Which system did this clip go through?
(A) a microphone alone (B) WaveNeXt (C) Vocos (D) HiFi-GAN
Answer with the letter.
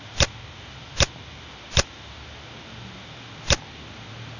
A